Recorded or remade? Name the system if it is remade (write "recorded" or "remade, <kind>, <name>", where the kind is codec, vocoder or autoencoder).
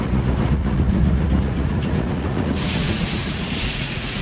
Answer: remade, vocoder, Vocos